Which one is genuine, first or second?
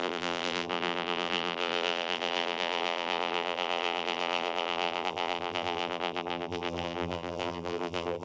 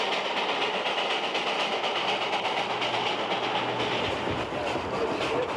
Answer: second